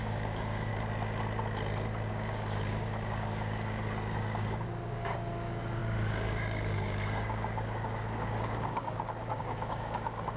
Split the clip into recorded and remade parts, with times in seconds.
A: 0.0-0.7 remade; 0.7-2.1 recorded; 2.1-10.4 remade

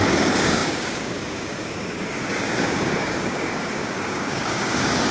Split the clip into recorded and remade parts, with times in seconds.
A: 0.0-5.1 remade

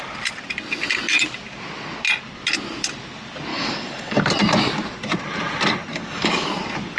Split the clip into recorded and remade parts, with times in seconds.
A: 0.0-3.5 recorded; 3.5-4.2 remade; 4.2-5.9 recorded; 5.9-6.5 remade; 6.5-7.0 recorded

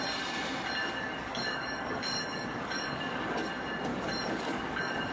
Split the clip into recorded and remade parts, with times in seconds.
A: 0.0-0.8 recorded; 0.8-3.5 remade; 3.5-3.9 recorded; 3.9-5.1 remade

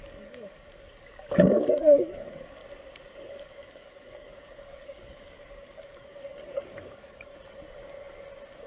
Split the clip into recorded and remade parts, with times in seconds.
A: 0.0-2.6 remade; 2.6-3.3 recorded; 3.3-7.3 remade; 7.3-8.7 recorded

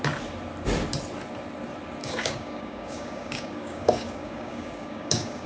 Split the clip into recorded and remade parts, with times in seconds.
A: 0.0-2.0 recorded; 2.0-5.5 remade

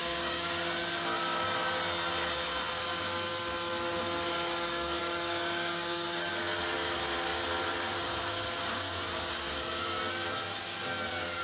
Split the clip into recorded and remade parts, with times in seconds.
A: 0.0-0.7 remade; 0.7-5.0 recorded; 5.0-6.3 remade; 6.3-11.4 recorded